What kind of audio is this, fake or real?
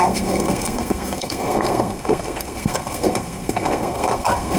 fake